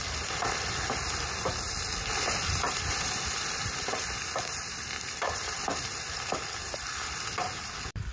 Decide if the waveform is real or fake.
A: fake